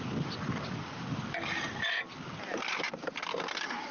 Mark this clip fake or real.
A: real